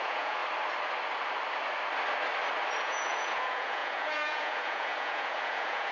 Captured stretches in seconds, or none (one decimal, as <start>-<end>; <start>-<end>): 0.4-2.8